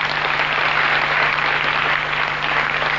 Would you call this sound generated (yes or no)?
no